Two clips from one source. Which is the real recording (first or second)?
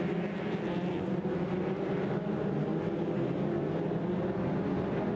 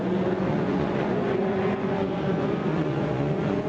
first